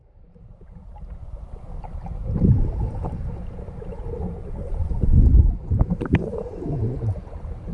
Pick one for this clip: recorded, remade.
remade